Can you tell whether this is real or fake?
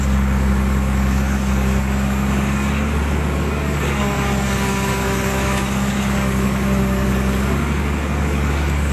fake